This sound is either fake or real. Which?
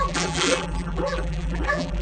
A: fake